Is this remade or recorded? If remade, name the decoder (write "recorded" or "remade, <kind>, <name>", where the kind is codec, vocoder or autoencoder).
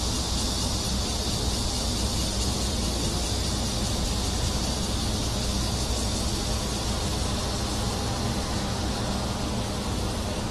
recorded